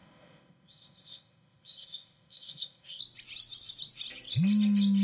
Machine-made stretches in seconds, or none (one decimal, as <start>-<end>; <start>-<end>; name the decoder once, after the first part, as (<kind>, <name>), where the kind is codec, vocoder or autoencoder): 0.0-3.0 (codec, ZipCodec)